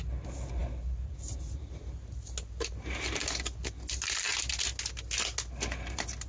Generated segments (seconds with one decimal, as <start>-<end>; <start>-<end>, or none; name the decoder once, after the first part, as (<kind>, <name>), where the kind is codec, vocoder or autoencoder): none